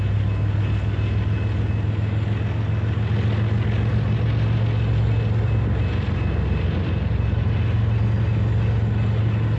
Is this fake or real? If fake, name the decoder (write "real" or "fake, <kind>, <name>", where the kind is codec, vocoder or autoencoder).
real